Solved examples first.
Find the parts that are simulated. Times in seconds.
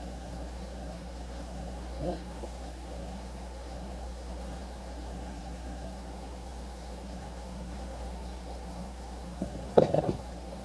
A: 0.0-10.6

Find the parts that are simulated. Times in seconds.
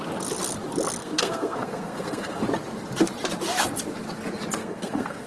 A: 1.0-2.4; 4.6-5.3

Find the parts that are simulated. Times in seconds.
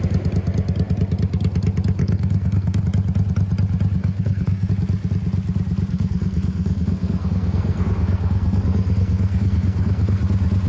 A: 2.0-2.8; 4.0-4.7; 5.9-10.2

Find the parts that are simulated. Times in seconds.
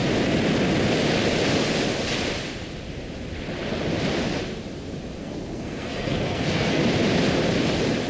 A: 5.2-6.8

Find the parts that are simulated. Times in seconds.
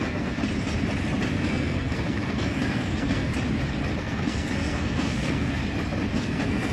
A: 0.0-0.4; 1.3-3.3; 4.0-5.6; 6.1-6.7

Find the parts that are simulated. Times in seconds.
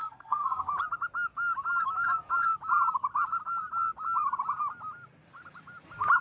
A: 0.0-0.6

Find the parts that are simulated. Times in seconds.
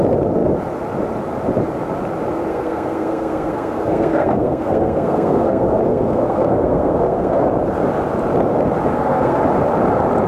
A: 2.5-7.5; 8.9-9.4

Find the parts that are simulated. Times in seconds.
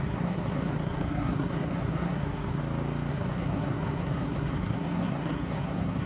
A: 0.0-2.6; 3.1-6.1